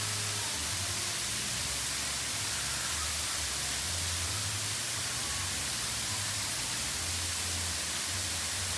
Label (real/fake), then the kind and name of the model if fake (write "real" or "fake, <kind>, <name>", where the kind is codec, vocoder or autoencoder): real